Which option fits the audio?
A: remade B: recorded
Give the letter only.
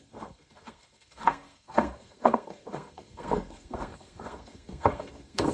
A